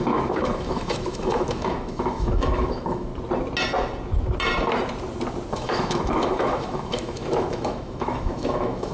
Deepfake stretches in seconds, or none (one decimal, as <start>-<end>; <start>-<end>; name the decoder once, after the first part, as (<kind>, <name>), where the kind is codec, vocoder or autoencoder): 0.0-3.1 (autoencoder, DAC-VAE); 5.5-8.9

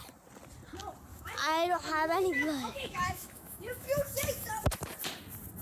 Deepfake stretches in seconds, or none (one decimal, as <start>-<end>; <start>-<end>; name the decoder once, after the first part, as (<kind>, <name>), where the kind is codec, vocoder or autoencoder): 1.1-4.5 (autoencoder, DAC-VAE)

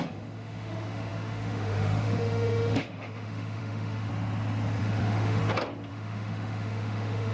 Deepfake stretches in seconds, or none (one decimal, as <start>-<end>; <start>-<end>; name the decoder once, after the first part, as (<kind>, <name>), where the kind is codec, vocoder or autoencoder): 0.0-4.1 (autoencoder, DAC-VAE); 4.8-5.4; 5.9-7.3